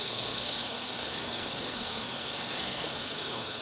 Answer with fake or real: fake